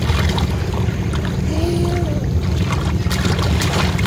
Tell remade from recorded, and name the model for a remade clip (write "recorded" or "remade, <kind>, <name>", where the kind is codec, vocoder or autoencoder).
recorded